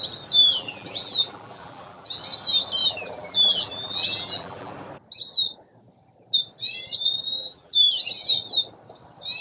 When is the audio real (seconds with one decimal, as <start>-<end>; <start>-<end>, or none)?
0.0-0.4; 2.2-2.8; 4.7-7.4; 7.9-9.4